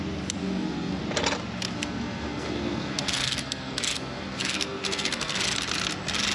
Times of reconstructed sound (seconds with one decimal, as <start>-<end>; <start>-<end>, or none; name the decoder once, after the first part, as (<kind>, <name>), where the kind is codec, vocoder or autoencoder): 0.4-1.0 (codec, SNAC); 1.7-5.4